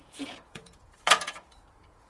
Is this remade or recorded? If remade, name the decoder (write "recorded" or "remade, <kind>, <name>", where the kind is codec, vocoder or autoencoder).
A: remade, vocoder, Vocos